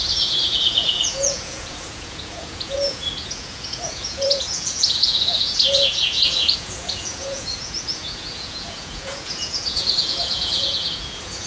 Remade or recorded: remade